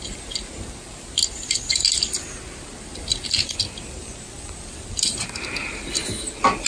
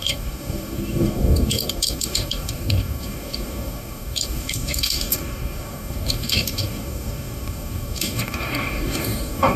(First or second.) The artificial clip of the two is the second